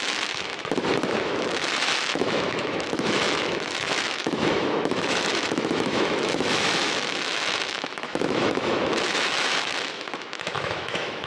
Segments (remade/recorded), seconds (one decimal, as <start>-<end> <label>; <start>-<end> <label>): 0.0-0.5 remade; 0.5-1.2 recorded; 1.2-11.3 remade

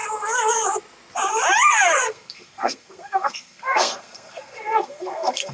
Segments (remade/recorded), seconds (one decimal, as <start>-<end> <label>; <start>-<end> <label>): 0.0-1.7 recorded; 1.7-5.5 remade

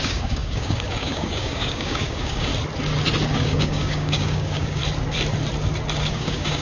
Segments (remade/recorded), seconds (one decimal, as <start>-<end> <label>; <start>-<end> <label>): 0.0-2.5 remade; 2.5-3.3 recorded; 3.3-4.8 remade; 4.8-6.1 recorded; 6.1-6.6 remade

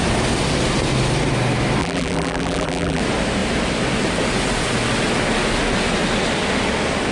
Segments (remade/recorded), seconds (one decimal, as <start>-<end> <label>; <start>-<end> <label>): 0.0-1.8 recorded; 1.8-3.0 remade; 3.0-7.1 recorded

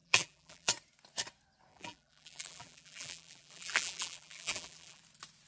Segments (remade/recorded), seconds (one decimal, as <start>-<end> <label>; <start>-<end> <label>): 0.0-0.7 remade; 0.7-1.7 recorded; 1.7-5.0 remade; 5.0-5.5 recorded

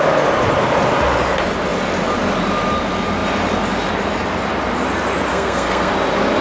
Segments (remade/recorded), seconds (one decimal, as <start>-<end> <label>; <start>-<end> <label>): 0.0-5.3 recorded; 5.3-5.9 remade; 5.9-6.4 recorded

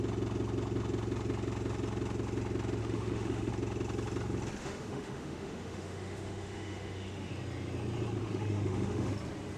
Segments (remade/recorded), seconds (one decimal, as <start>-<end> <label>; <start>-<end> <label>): 0.0-2.8 recorded; 2.8-3.5 remade; 3.5-4.6 recorded; 4.6-7.3 remade; 7.3-8.2 recorded; 8.2-9.1 remade; 9.1-9.6 recorded